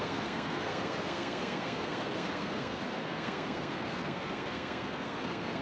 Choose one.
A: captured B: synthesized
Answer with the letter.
B